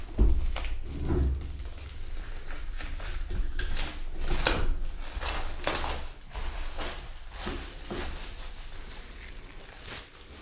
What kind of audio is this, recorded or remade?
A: recorded